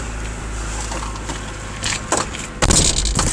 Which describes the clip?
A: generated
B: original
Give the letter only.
B